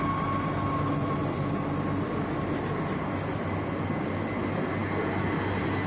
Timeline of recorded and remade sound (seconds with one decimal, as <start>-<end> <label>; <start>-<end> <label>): 0.0-5.9 recorded